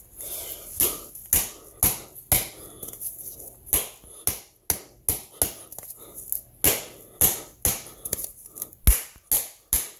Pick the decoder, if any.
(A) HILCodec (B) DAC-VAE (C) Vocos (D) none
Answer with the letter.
D